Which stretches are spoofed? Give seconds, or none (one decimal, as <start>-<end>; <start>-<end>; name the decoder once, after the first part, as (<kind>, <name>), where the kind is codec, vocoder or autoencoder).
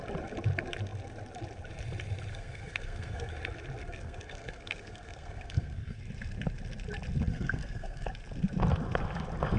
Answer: 2.3-3.3 (codec, SNAC); 3.8-6.0; 7.3-8.1